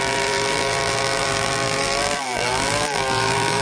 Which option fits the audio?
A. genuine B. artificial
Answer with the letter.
B